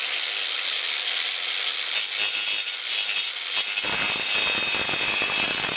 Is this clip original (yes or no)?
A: yes